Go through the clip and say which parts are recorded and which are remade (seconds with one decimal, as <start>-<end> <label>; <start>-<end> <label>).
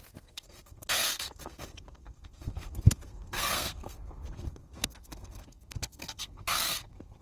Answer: 0.0-7.2 remade